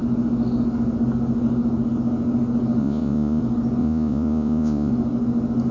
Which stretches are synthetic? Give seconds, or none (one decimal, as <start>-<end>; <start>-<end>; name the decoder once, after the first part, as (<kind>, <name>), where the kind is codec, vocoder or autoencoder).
2.8-3.4 (vocoder, Vocos); 3.8-4.9